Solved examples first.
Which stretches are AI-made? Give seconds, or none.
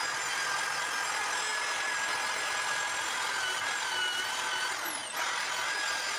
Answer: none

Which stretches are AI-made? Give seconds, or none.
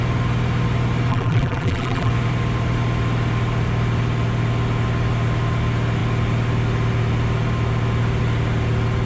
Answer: 1.1-2.1